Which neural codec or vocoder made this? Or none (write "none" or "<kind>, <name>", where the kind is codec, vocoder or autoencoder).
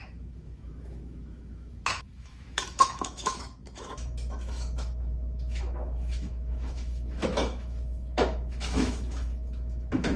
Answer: autoencoder, DAC-VAE